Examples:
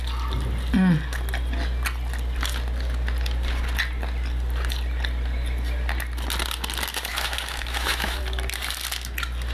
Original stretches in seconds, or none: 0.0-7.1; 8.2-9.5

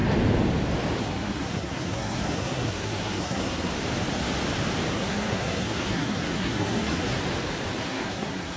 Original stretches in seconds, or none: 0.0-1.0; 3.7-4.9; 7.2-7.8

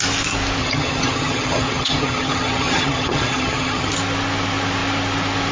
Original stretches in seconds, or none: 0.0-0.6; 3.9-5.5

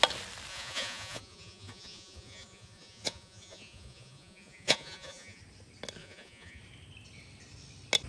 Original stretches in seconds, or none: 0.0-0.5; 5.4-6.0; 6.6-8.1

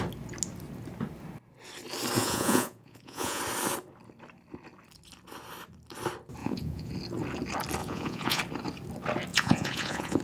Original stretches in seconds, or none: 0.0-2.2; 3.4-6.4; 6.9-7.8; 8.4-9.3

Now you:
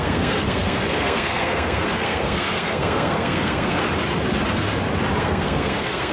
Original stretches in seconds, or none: 3.8-5.2